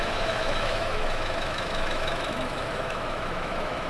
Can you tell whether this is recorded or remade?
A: remade